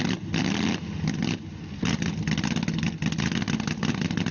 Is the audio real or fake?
real